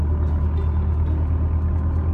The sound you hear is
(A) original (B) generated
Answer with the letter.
A